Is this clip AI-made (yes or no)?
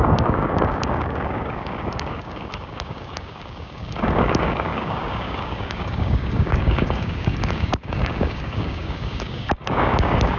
yes